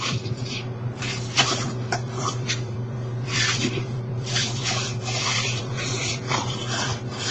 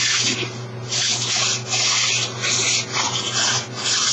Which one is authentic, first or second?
second